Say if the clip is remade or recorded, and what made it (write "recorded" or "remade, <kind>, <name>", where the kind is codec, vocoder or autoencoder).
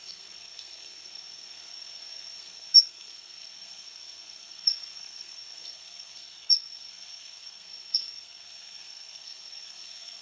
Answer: remade, codec, SNAC